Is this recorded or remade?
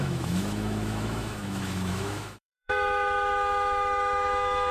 remade